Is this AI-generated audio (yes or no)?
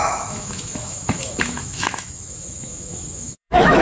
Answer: yes